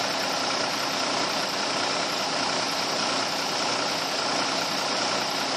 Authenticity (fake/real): real